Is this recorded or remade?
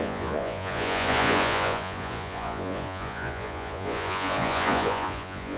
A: remade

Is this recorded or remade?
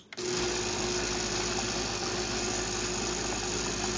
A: recorded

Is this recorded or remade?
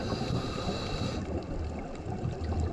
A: recorded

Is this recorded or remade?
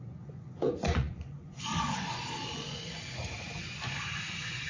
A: remade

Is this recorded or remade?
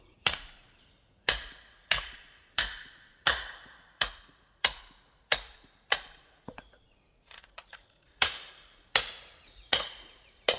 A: remade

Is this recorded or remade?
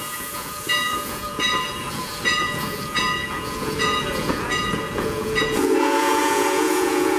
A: remade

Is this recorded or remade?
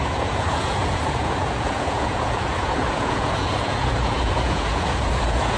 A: remade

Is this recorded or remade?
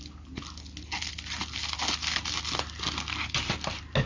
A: recorded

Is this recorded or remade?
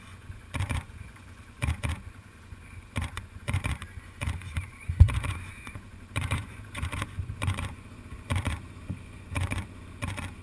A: remade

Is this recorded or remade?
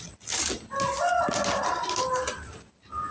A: recorded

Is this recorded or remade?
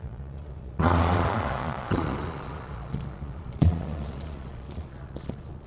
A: remade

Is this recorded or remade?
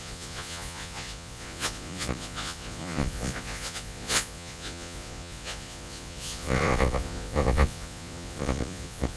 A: remade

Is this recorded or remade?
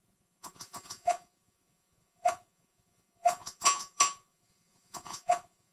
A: remade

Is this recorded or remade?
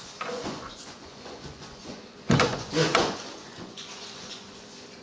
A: remade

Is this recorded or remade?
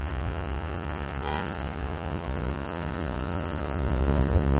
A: remade